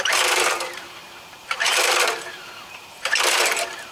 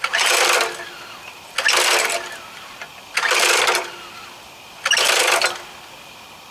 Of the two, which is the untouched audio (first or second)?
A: second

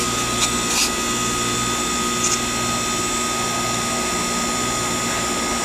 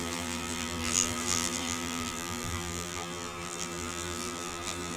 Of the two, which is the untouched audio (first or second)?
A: first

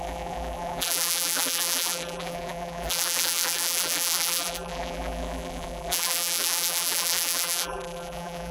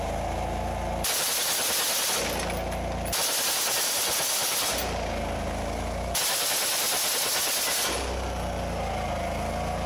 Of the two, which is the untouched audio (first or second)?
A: second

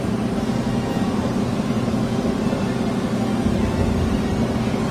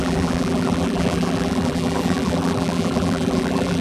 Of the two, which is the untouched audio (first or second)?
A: first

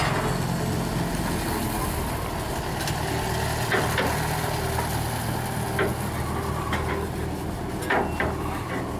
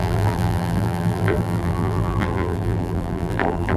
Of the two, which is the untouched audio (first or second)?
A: first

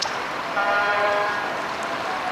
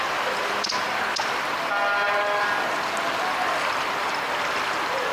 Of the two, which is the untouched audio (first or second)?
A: second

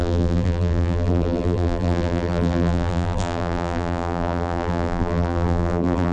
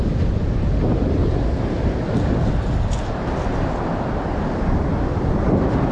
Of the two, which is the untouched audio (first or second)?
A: second